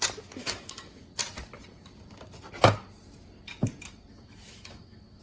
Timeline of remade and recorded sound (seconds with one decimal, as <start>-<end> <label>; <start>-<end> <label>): 0.0-0.4 recorded; 0.4-1.0 remade; 1.0-4.1 recorded; 4.1-5.2 remade